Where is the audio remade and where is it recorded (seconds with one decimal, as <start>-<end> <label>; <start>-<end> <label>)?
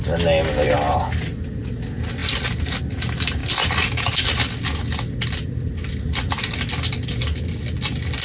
0.0-8.2 recorded